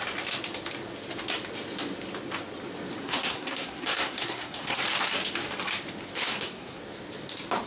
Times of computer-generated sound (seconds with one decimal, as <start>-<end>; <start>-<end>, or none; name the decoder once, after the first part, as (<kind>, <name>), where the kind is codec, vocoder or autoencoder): 3.0-4.8 (codec, SNAC); 6.2-6.8